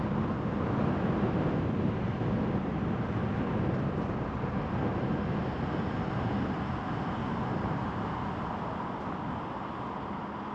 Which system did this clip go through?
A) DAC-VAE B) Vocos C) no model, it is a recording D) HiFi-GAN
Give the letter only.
C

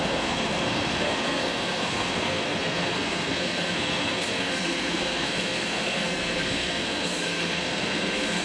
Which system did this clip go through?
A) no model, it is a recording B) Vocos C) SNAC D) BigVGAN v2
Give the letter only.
C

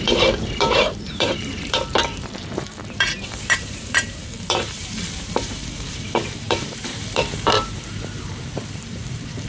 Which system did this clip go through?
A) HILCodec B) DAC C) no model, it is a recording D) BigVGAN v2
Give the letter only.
D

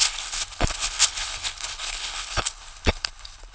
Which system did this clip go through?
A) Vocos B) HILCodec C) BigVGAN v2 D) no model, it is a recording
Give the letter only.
B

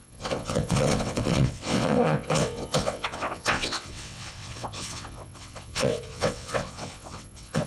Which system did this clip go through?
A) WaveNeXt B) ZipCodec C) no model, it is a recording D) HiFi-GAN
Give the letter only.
A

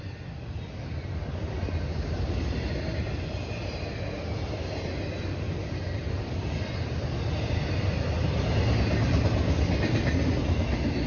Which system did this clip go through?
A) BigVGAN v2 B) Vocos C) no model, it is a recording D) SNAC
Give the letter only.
C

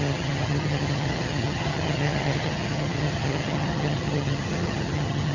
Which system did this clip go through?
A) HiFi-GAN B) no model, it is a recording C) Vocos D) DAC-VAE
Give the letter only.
A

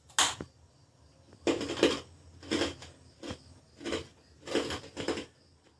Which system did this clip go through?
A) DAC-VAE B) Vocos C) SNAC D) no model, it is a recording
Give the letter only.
D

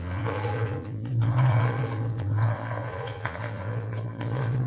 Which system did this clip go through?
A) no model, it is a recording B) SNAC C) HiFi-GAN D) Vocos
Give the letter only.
D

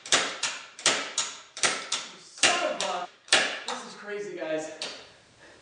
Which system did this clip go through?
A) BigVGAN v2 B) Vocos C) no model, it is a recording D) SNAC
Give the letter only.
A